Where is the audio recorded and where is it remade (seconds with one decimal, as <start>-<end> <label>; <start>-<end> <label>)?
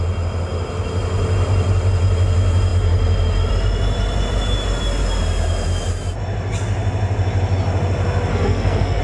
0.0-8.3 recorded; 8.3-9.0 remade